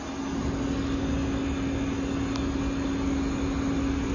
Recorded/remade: recorded